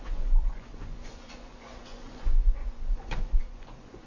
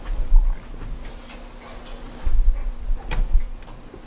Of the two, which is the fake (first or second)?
first